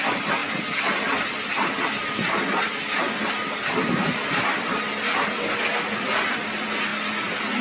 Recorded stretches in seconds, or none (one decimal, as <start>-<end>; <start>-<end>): 0.0-7.6